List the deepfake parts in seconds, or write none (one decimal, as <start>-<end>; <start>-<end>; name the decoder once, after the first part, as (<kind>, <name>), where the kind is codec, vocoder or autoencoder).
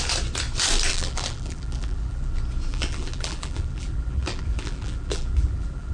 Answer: 0.9-2.3 (vocoder, BigVGAN v2); 2.7-5.9